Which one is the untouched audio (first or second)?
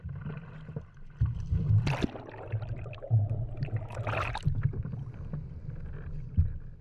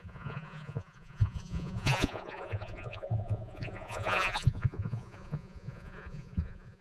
first